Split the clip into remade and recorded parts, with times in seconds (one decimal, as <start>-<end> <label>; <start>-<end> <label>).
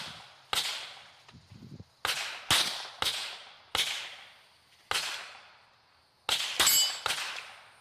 0.0-7.8 recorded